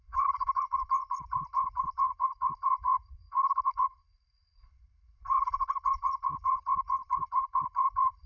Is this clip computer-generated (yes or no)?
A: yes